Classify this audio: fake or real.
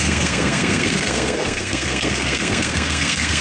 fake